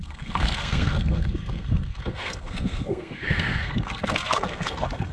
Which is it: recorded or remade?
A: remade